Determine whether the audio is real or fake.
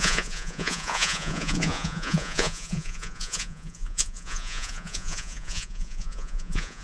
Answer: fake